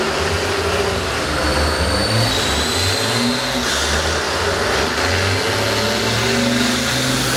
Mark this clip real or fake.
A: real